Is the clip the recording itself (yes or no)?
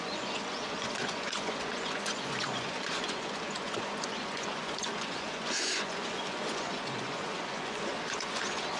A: no